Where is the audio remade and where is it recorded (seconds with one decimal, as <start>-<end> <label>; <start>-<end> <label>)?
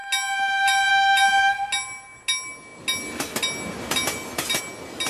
0.0-5.1 recorded